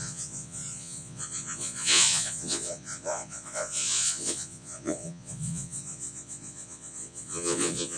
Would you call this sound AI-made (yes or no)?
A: yes